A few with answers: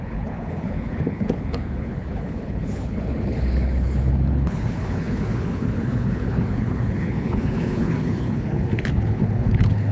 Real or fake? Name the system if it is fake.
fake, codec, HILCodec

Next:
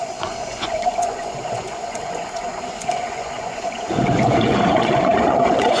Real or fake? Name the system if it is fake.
fake, vocoder, Vocos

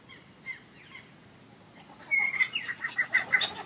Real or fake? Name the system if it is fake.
real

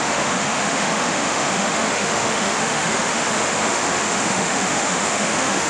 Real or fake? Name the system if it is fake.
fake, autoencoder, DAC-VAE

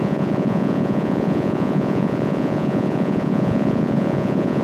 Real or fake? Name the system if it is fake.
fake, vocoder, Vocos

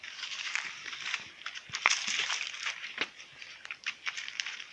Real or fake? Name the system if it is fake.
fake, vocoder, BigVGAN v2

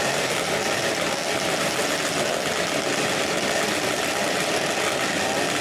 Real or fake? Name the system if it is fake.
real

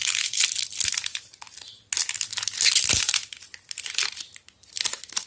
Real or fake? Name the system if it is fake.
real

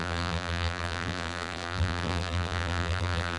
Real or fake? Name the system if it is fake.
fake, vocoder, BigVGAN v2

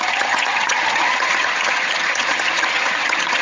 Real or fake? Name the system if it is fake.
fake, vocoder, HiFi-GAN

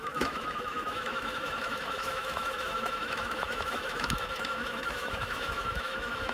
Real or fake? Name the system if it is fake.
fake, autoencoder, DAC-VAE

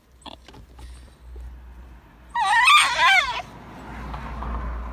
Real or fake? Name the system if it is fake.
real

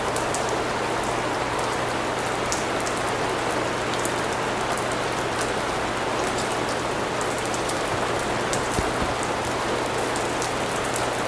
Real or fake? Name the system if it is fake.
real